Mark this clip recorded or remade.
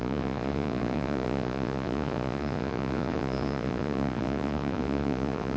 remade